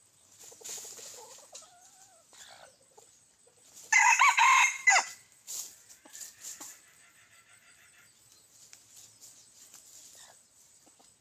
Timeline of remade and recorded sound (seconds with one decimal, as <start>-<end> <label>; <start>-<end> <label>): 0.0-11.2 recorded